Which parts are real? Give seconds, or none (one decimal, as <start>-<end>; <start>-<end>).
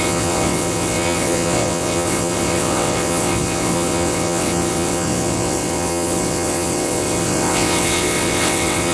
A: none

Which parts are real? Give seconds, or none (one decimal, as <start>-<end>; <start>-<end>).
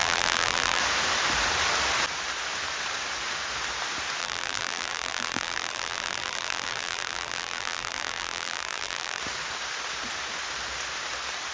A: 0.8-4.2; 9.2-11.5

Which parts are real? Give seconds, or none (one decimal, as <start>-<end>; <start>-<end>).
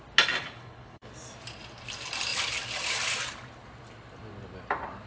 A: 0.0-0.4; 1.1-5.1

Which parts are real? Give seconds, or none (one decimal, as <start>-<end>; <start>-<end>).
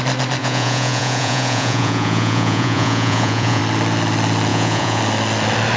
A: 0.0-0.4; 3.6-4.5; 5.0-5.8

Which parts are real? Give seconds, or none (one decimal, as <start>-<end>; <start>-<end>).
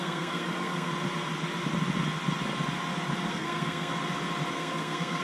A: 0.9-3.3; 3.9-4.5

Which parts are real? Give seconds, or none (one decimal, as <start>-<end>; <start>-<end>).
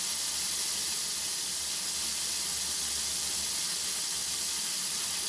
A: 0.0-5.3